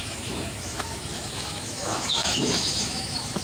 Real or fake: fake